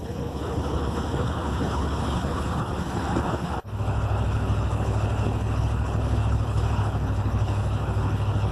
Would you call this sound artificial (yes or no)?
yes